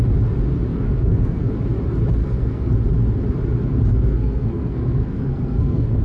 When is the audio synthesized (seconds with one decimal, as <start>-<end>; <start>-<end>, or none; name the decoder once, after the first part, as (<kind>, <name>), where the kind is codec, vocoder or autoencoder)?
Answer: 0.7-1.5 (codec, SNAC); 2.2-2.7; 3.9-6.0